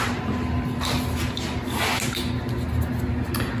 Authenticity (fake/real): real